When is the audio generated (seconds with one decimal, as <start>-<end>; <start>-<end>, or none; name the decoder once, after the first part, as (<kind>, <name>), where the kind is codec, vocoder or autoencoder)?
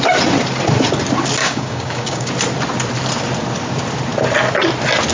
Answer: 1.4-2.3 (codec, DAC)